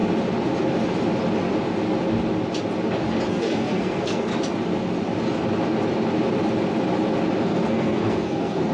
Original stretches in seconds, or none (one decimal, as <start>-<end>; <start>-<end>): 0.0-3.3; 4.3-7.4